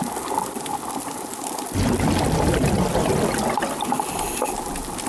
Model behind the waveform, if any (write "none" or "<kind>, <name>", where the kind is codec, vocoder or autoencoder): none